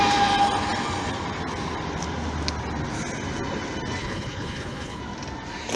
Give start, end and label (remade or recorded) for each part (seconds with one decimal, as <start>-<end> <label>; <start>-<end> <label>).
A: 0.0-4.0 recorded; 4.0-5.0 remade; 5.0-5.8 recorded